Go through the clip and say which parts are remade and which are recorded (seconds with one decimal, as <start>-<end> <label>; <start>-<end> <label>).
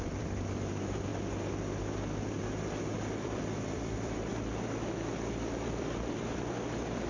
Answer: 0.0-1.1 remade; 1.1-2.4 recorded; 2.4-4.3 remade; 4.3-5.1 recorded; 5.1-7.1 remade